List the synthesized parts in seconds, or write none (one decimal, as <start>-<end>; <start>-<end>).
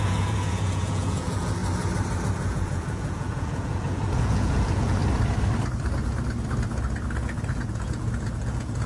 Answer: 0.0-1.6; 2.2-5.0; 7.5-8.9